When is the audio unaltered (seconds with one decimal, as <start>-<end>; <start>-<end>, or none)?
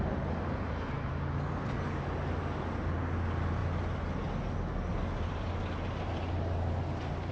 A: 0.0-4.9; 5.6-7.3